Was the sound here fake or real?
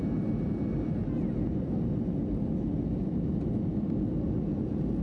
real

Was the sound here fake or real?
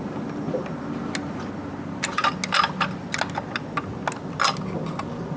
real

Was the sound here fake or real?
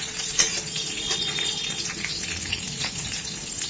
fake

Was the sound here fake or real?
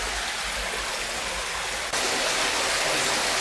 real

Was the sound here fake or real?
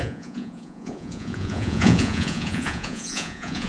fake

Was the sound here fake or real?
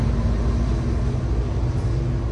real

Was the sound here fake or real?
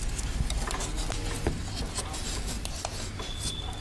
real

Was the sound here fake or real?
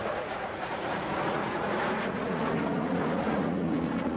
fake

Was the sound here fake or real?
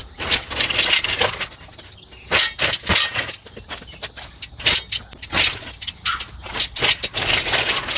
real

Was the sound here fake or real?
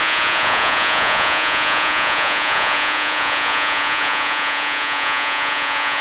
fake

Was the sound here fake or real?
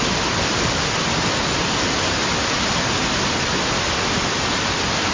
real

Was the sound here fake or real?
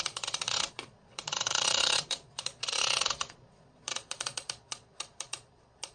fake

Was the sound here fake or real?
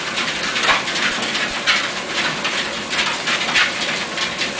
real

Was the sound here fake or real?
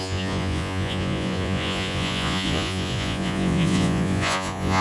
fake